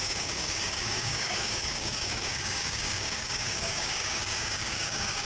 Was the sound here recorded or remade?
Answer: remade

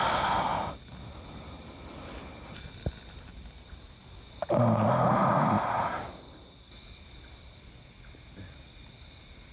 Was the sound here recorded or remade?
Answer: recorded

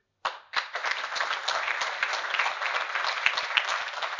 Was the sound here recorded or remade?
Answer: recorded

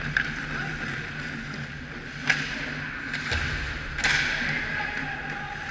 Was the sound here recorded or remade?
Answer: recorded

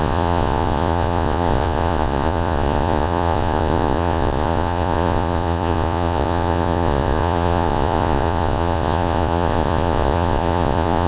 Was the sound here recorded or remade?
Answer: remade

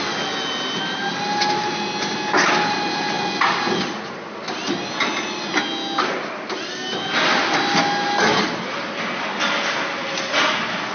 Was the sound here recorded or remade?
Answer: recorded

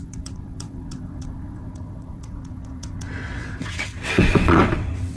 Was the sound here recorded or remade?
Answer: remade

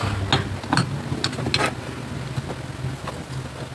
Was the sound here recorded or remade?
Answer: recorded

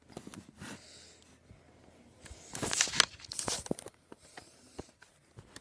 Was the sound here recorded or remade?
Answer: recorded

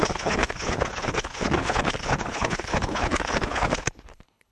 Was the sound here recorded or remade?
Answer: remade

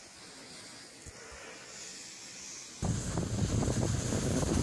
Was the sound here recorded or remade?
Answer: remade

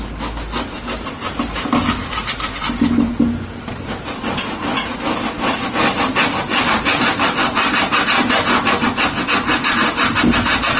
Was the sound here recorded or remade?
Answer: recorded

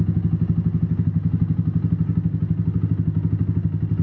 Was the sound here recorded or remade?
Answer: recorded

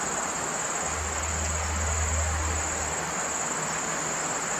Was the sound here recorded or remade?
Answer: recorded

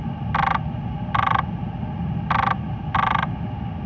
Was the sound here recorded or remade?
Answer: recorded